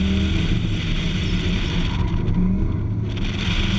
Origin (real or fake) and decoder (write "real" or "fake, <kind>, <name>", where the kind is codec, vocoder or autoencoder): real